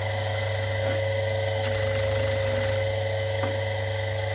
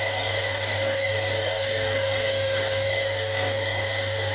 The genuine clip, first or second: first